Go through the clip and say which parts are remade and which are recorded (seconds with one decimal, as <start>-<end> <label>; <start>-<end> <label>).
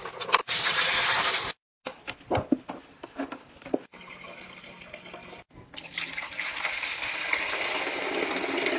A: 0.0-8.8 recorded